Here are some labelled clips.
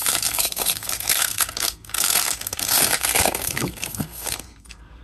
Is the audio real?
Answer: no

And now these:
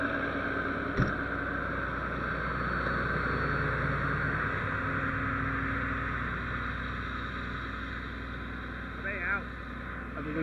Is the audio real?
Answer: yes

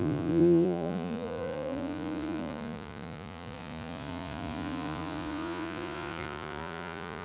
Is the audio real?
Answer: no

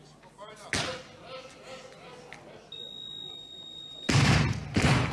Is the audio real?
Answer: yes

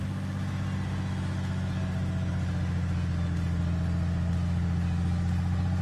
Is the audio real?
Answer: yes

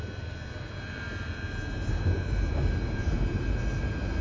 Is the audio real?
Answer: no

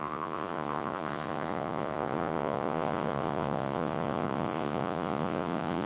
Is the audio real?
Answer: no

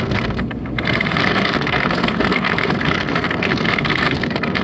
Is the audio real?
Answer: no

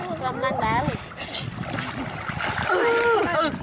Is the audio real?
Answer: yes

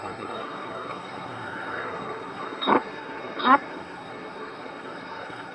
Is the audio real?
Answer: no